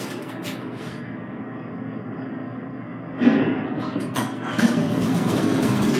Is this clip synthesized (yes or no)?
yes